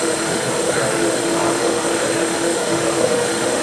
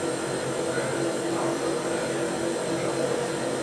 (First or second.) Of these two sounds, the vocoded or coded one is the first